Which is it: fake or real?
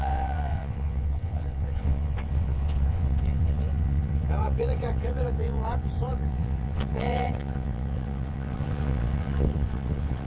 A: fake